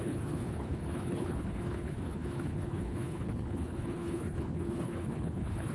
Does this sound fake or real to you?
fake